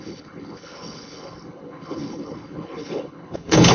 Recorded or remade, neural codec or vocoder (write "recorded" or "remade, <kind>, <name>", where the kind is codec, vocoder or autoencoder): remade, codec, HILCodec